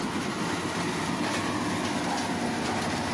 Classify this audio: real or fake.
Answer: real